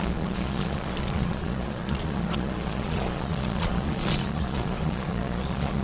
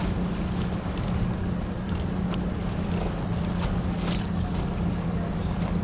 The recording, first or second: second